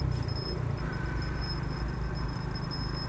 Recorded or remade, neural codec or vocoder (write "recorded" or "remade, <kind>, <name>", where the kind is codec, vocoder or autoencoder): recorded